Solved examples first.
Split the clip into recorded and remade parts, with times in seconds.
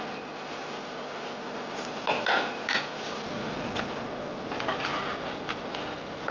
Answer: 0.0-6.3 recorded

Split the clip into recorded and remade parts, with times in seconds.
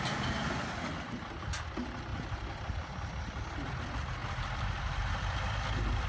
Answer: 0.0-6.1 recorded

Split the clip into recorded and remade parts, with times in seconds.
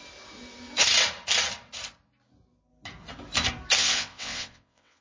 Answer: 0.0-3.8 recorded; 3.8-5.0 remade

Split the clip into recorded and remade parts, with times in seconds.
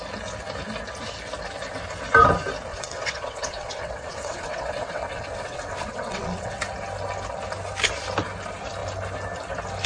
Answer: 0.0-2.7 recorded; 2.7-6.6 remade; 6.6-9.9 recorded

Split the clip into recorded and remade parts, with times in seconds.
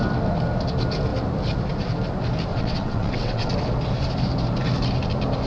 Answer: 0.0-2.5 recorded; 2.5-3.5 remade; 3.5-5.5 recorded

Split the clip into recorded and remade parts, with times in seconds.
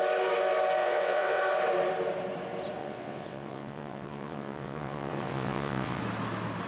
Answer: 0.0-0.8 recorded; 0.8-1.4 remade; 1.4-2.8 recorded; 2.8-6.0 remade; 6.0-6.7 recorded